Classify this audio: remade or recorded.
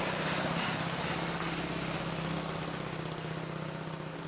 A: recorded